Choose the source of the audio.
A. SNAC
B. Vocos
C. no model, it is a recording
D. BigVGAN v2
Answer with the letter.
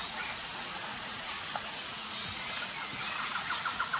B